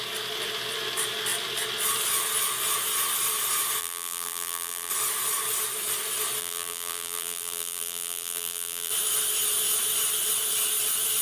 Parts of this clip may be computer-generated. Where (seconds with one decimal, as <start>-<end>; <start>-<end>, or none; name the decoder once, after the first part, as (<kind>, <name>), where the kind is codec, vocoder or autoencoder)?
3.8-4.9 (vocoder, BigVGAN v2); 6.4-8.9